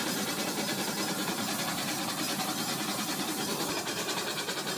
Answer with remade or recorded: remade